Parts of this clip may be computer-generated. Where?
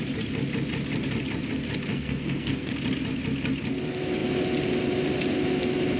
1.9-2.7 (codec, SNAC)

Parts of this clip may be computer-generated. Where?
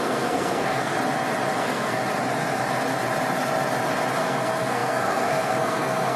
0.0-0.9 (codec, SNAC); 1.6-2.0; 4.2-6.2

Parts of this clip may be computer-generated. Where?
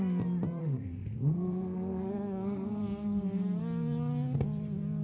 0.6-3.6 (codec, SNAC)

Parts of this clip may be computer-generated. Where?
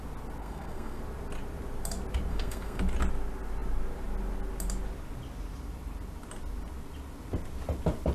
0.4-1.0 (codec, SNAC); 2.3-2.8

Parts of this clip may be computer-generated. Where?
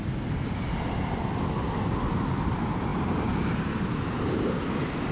none